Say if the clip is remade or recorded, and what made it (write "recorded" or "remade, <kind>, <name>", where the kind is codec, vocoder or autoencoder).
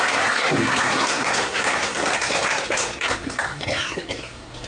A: remade, codec, SNAC